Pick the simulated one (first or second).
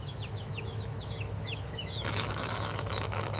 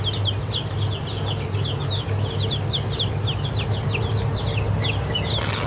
first